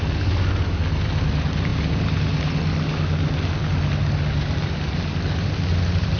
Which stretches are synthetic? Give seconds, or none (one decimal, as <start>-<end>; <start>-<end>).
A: none